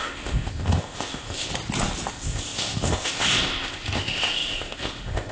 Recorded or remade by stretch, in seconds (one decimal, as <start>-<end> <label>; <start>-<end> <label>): 0.0-1.5 remade; 1.5-2.1 recorded; 2.1-5.3 remade